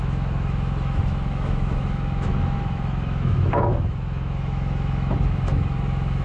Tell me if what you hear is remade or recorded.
remade